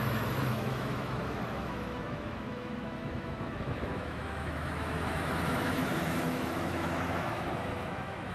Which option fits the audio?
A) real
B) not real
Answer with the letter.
B